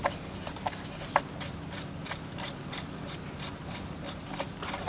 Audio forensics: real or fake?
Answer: real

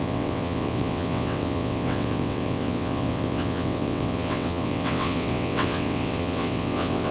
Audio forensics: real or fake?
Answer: fake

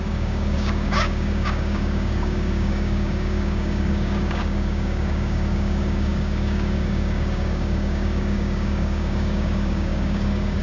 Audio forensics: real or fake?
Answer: fake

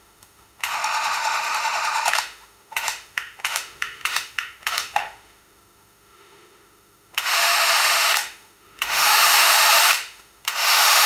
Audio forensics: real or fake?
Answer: fake